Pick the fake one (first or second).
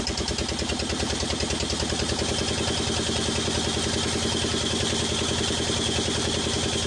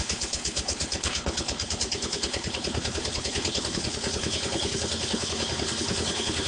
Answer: second